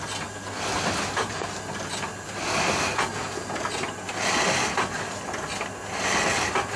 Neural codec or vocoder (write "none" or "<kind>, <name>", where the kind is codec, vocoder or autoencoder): none